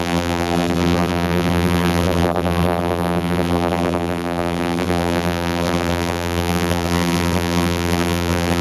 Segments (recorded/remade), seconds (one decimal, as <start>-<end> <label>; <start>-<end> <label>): 0.0-8.6 remade

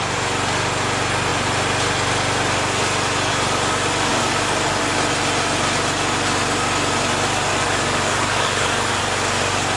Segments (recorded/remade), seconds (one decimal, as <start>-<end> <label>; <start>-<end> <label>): 0.0-4.1 recorded; 4.1-4.8 remade; 4.8-7.5 recorded; 7.5-9.0 remade; 9.0-9.8 recorded

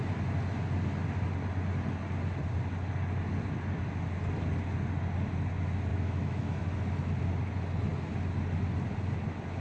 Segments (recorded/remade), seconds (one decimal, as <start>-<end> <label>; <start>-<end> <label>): 0.0-5.9 recorded; 5.9-6.6 remade; 6.6-9.6 recorded